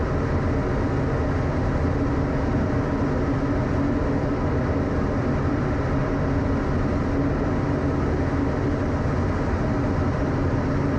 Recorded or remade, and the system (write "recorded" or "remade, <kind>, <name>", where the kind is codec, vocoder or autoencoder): recorded